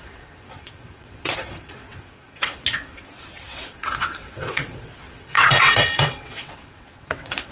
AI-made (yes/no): yes